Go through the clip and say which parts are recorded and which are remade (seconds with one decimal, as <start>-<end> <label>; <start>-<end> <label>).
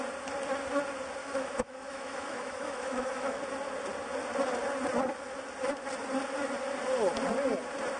0.0-1.2 recorded; 1.2-3.4 remade; 3.4-8.0 recorded